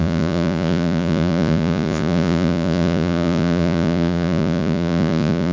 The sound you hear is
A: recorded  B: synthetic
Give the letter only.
B